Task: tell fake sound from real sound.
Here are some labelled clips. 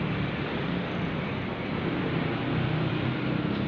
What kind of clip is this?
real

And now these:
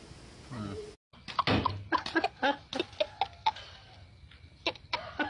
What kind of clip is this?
real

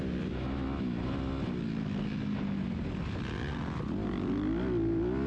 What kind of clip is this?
real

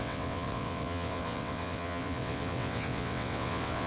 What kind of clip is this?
fake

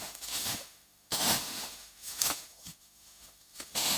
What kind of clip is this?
fake